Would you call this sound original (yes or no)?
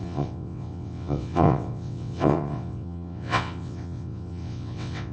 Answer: no